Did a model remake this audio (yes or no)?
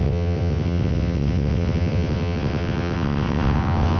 yes